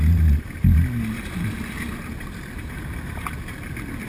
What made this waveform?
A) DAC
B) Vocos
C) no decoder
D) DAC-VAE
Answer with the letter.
C